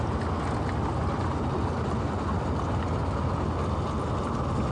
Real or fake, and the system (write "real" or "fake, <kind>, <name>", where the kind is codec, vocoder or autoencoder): real